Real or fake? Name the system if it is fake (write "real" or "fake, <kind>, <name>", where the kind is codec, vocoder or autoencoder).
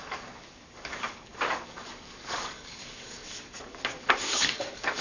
fake, codec, DAC